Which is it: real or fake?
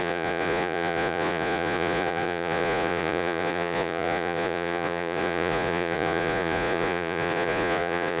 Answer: fake